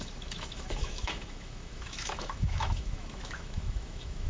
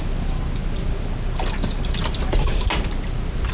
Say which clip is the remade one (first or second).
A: first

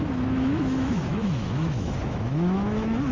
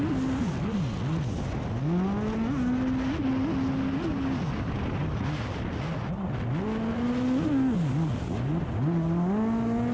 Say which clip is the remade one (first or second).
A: first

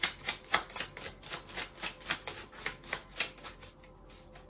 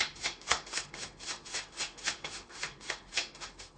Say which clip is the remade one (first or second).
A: second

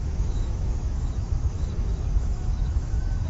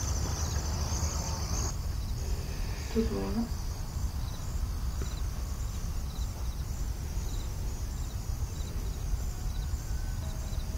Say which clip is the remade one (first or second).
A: first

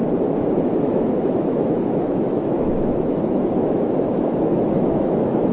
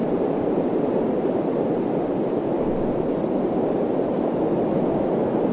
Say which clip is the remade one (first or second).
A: first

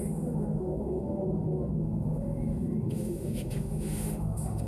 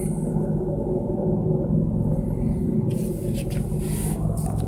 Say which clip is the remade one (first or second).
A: first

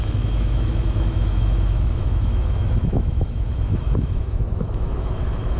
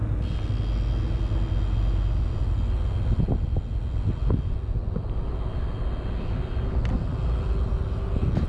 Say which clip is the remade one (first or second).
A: first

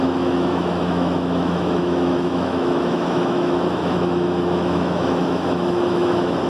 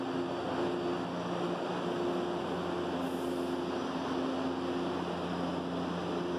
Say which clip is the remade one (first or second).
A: first